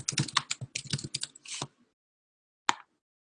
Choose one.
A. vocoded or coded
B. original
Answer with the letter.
B